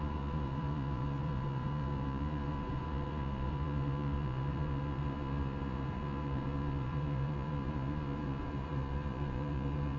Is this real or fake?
fake